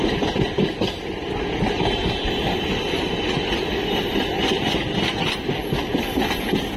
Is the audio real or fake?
real